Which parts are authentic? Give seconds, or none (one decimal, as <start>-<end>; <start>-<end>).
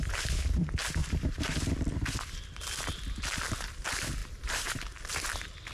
0.0-1.0; 1.7-4.2; 4.8-5.7